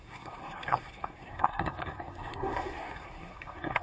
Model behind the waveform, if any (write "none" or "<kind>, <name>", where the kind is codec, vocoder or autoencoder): codec, SNAC